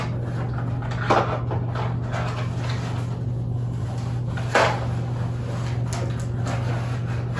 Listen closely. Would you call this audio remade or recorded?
recorded